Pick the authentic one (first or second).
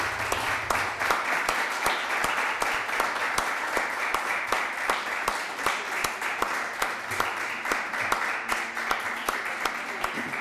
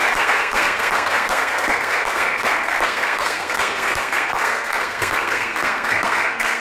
first